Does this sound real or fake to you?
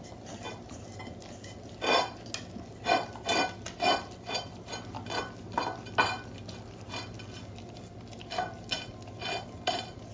real